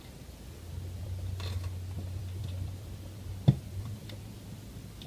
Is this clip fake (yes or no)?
yes